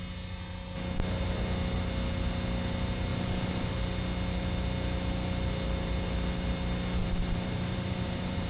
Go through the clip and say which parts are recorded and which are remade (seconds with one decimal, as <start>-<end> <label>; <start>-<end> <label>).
0.0-3.1 recorded; 3.1-3.7 remade; 3.7-7.0 recorded; 7.0-8.5 remade